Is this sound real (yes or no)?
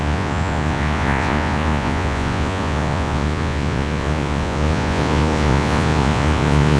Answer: no